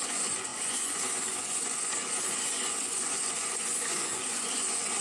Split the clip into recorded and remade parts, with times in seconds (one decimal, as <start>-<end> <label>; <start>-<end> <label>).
0.0-5.0 remade